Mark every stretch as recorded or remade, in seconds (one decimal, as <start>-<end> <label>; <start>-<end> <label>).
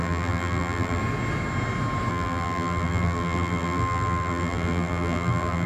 0.0-1.0 remade; 1.0-2.1 recorded; 2.1-5.7 remade